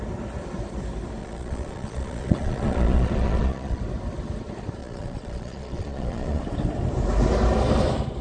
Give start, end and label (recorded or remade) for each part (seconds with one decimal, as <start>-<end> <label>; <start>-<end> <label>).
0.0-1.2 recorded; 1.2-3.8 remade; 3.8-4.8 recorded; 4.8-6.4 remade; 6.4-8.2 recorded